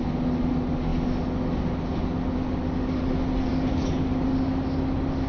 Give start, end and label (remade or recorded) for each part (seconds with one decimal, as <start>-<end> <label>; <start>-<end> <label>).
0.0-5.3 recorded